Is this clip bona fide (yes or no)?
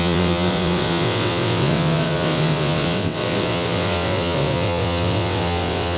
no